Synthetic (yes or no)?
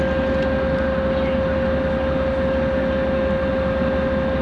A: no